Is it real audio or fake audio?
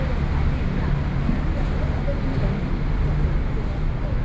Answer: real